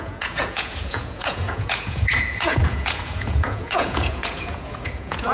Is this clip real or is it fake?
fake